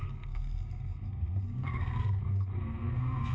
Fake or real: fake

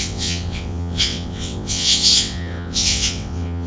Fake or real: fake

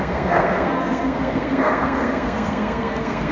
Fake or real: fake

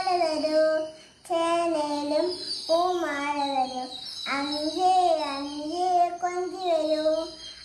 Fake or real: real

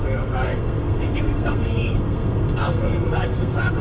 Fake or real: fake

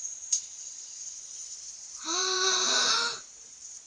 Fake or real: fake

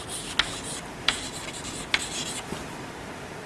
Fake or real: fake